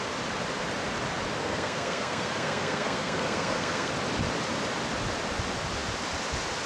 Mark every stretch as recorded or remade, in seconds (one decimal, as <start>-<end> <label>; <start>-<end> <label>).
0.0-1.4 recorded; 1.4-3.9 remade; 3.9-6.7 recorded